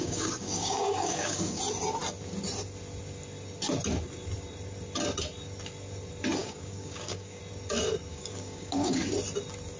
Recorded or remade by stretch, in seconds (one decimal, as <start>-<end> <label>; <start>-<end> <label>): 0.0-1.6 remade; 1.6-6.4 recorded; 6.4-7.4 remade; 7.4-8.1 recorded; 8.1-9.1 remade; 9.1-9.8 recorded